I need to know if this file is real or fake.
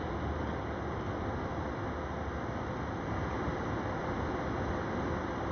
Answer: real